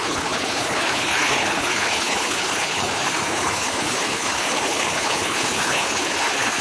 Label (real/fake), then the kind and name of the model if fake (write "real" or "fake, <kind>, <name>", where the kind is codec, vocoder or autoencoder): fake, codec, HILCodec